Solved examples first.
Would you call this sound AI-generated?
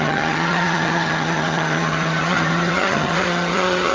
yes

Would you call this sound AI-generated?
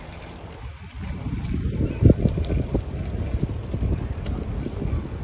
no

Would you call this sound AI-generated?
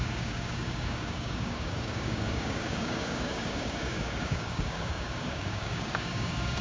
yes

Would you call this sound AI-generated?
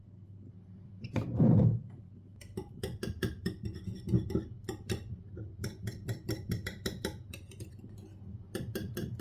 yes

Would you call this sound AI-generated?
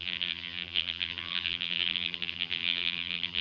yes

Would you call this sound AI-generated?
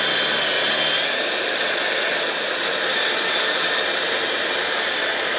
no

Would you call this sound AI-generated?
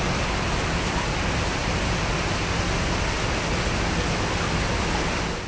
no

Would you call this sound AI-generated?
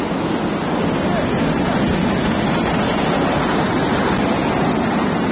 no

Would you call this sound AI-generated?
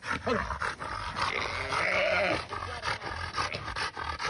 no